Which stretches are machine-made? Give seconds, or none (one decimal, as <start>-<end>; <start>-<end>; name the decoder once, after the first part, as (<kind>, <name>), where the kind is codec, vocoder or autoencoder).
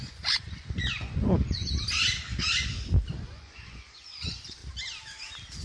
0.0-1.6 (vocoder, Vocos); 3.3-4.6